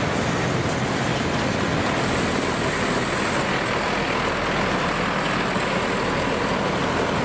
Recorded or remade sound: recorded